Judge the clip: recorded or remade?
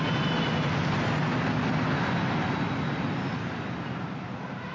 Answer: recorded